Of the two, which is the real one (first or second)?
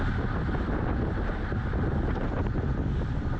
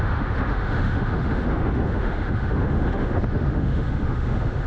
first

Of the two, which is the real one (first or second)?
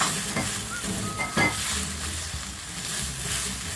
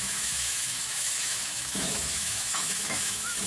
first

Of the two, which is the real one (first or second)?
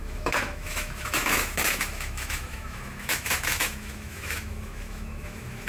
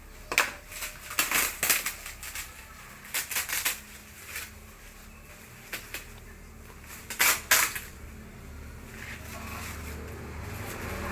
second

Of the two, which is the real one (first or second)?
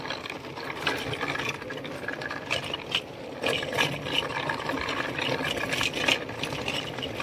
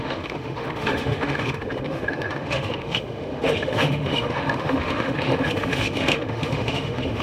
first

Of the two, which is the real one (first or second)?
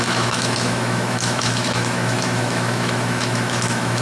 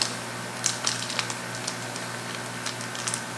second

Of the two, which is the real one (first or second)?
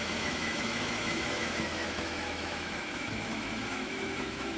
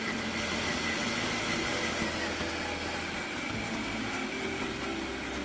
second